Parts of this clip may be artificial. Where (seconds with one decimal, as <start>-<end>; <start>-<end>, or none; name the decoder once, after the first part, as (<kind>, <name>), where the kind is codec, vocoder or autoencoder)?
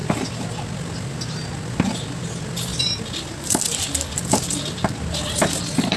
none